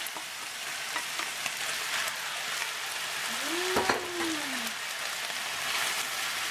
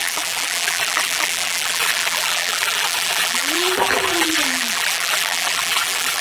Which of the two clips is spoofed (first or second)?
second